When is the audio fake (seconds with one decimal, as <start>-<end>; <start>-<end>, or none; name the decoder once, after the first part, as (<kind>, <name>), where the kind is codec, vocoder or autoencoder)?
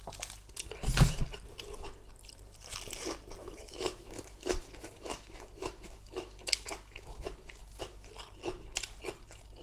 3.4-8.1 (autoencoder, DAC-VAE)